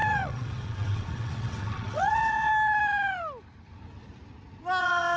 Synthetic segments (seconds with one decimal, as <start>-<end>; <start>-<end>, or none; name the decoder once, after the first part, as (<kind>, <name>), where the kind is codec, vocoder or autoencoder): 0.0-2.5 (vocoder, WaveNeXt); 4.8-5.2